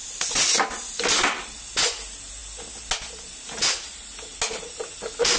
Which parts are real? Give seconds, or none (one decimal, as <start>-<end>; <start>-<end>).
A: 0.0-5.4